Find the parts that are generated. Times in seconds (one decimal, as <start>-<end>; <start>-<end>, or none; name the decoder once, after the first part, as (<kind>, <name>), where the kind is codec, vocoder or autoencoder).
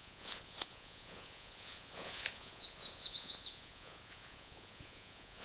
0.0-5.4 (vocoder, Vocos)